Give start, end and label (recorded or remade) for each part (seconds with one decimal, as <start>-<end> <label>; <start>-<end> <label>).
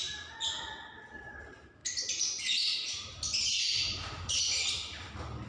0.0-5.5 recorded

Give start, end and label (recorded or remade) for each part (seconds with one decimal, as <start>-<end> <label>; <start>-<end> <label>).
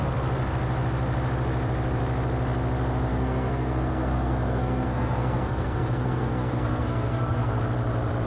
0.0-3.1 recorded; 3.1-7.6 remade; 7.6-8.3 recorded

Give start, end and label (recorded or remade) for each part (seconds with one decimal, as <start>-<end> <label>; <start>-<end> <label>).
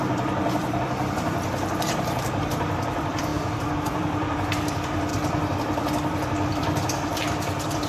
0.0-7.9 remade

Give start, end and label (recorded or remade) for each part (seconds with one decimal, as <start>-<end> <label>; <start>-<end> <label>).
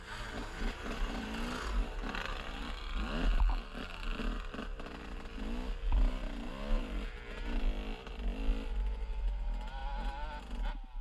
0.0-11.0 recorded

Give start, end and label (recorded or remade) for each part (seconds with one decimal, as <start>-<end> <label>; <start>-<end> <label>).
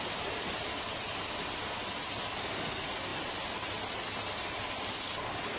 0.0-5.6 recorded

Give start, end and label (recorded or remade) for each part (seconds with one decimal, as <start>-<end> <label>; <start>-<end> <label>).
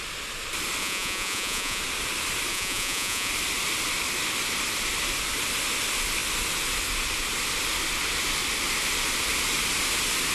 0.0-0.8 recorded; 0.8-1.8 remade; 1.8-2.5 recorded; 2.5-3.3 remade; 3.3-10.3 recorded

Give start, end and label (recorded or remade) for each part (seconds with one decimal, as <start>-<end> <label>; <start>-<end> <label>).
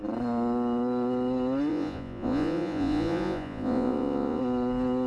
0.0-1.7 recorded; 1.7-4.4 remade; 4.4-5.1 recorded